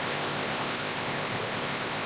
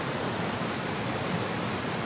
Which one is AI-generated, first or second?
first